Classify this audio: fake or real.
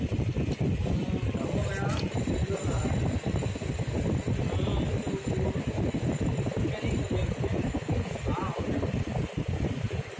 real